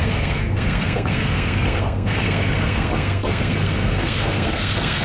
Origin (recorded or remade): remade